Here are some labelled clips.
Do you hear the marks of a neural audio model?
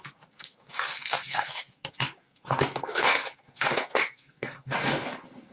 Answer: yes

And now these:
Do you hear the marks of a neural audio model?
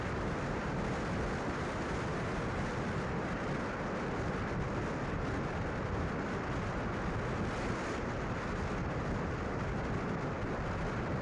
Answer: no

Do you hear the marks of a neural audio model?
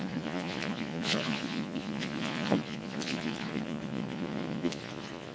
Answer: yes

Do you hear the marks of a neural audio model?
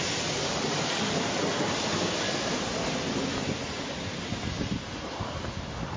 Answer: no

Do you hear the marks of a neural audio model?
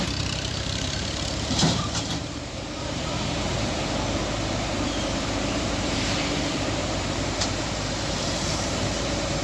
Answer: yes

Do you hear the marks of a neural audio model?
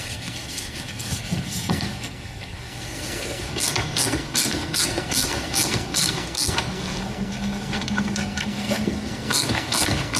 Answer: yes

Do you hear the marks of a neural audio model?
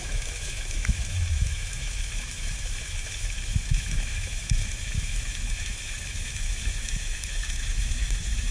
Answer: yes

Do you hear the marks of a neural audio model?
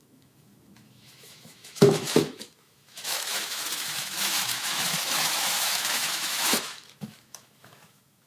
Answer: yes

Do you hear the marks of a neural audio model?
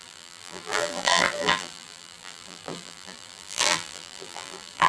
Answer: yes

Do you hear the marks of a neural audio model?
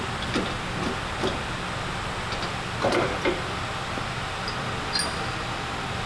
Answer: no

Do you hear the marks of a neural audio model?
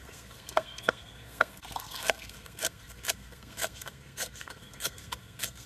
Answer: yes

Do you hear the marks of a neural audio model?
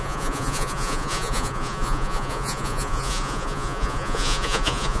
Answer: yes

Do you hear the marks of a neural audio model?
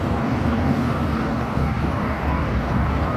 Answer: yes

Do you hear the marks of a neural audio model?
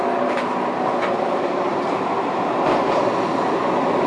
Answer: no